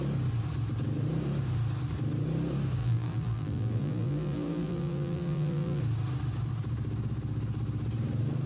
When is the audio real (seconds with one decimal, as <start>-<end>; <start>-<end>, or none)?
0.0-2.8; 5.8-8.5